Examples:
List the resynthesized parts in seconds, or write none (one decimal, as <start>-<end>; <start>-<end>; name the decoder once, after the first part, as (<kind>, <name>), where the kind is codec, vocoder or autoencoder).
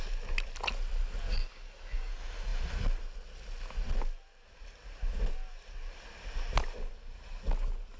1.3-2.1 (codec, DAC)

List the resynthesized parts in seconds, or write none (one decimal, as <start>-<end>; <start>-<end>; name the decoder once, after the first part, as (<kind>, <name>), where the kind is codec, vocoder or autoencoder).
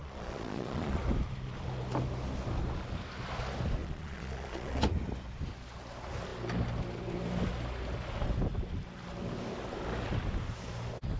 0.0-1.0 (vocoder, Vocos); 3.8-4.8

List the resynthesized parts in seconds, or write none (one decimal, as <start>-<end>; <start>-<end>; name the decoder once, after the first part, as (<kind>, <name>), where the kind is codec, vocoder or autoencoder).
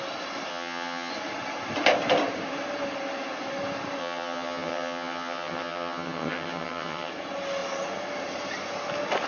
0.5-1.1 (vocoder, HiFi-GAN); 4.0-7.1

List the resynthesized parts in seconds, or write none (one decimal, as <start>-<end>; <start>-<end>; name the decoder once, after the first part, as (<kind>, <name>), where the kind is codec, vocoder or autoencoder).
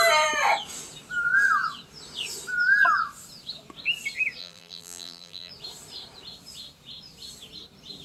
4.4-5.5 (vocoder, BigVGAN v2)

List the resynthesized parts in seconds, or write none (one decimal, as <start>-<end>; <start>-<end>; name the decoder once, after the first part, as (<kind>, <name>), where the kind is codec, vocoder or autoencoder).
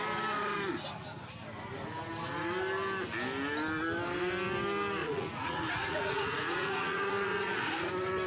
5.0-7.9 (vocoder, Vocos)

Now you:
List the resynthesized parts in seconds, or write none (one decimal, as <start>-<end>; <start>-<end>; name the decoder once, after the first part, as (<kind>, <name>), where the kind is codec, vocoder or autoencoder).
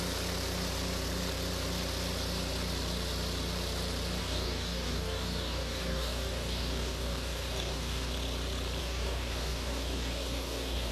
4.2-8.1 (codec, DAC); 8.8-10.9